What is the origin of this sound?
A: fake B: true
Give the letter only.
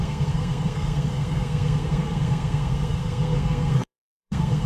A